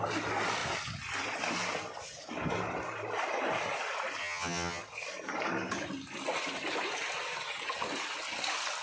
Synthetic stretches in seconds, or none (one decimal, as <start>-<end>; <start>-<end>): 4.2-4.8